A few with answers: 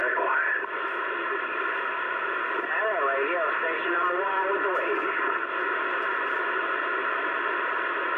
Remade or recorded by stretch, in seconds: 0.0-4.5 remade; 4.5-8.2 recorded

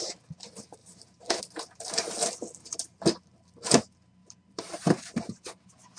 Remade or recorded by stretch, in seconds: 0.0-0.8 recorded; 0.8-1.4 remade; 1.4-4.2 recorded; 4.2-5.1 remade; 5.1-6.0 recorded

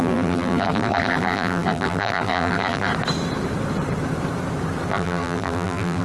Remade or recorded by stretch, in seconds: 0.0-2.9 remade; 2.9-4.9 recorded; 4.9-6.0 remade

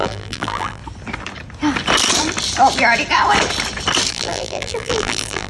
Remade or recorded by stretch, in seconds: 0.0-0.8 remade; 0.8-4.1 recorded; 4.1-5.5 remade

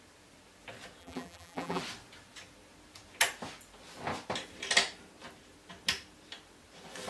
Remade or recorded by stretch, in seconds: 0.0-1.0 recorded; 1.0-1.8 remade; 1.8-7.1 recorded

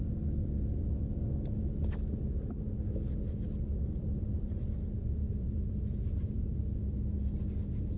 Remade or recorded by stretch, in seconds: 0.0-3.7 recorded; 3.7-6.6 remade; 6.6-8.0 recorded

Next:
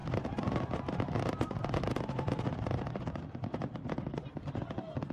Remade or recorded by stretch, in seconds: 0.0-3.1 recorded; 3.1-5.1 remade

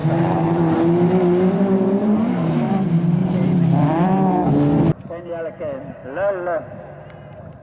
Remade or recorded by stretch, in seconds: 0.0-2.7 remade; 2.7-3.2 recorded; 3.2-4.5 remade; 4.5-7.6 recorded